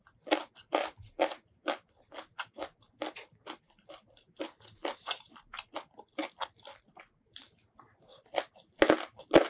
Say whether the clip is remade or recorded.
recorded